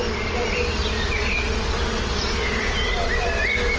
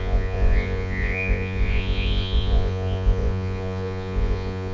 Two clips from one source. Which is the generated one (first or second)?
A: second